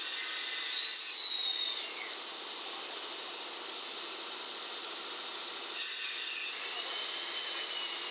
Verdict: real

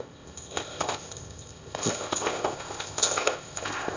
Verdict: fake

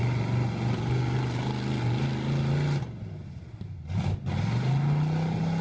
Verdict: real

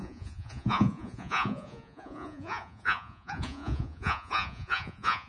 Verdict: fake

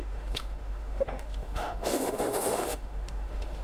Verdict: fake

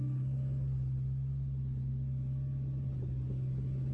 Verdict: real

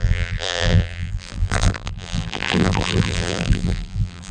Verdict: fake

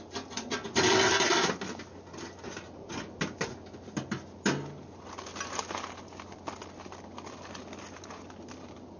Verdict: real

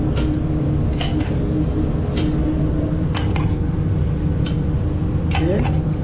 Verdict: real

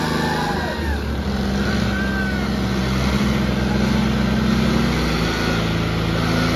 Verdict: real